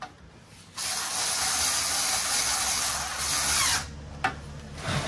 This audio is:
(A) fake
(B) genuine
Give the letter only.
B